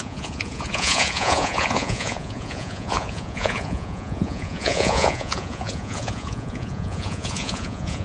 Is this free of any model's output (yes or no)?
no